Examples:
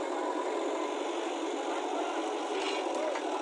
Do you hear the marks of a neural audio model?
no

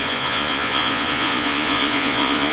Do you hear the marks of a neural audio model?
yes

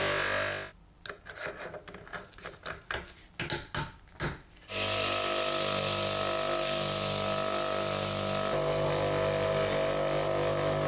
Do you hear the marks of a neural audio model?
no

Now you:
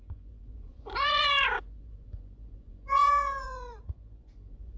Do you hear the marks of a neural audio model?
yes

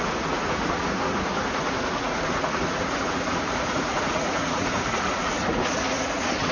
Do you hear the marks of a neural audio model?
yes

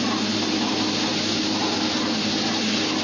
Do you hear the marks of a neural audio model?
no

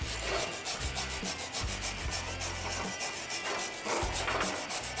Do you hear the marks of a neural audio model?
no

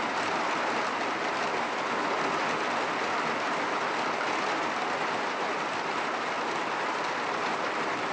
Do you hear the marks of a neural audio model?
no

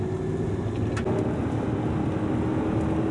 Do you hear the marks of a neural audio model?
no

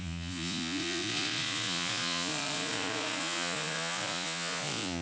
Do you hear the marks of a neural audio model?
yes